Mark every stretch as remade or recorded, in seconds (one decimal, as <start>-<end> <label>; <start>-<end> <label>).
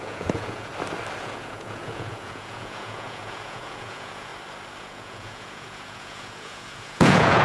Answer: 0.0-0.7 remade; 0.7-1.2 recorded; 1.2-4.3 remade; 4.3-4.8 recorded; 4.8-7.4 remade